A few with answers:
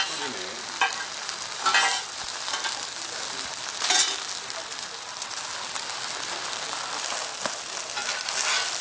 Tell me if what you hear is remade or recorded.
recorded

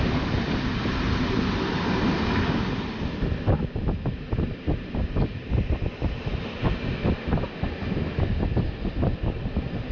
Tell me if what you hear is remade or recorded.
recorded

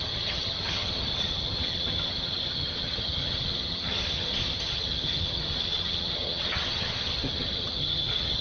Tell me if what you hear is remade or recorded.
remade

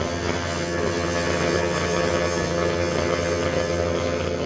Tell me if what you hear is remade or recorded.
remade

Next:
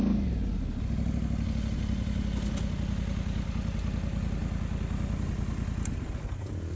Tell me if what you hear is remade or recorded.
recorded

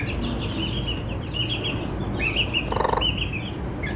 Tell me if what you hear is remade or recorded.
recorded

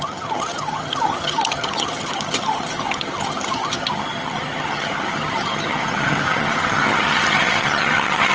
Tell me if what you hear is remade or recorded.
remade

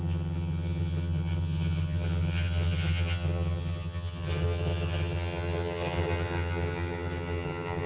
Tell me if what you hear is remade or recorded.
remade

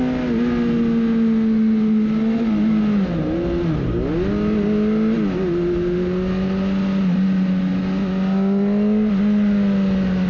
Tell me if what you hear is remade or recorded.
recorded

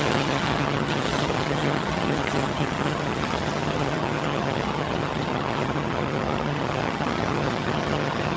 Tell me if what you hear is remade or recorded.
remade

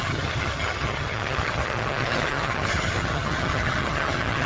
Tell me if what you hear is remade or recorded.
remade